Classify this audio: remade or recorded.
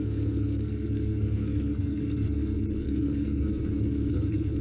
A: remade